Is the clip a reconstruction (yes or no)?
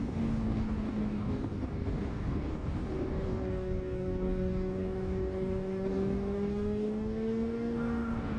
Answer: yes